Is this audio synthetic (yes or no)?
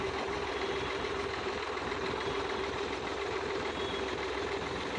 yes